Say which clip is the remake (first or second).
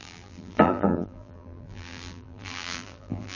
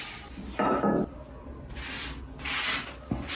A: first